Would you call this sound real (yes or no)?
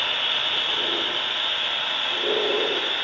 yes